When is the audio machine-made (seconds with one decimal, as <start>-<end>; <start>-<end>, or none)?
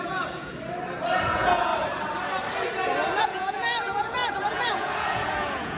0.0-0.5; 1.2-1.7; 3.2-5.8